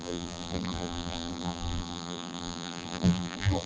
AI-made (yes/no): yes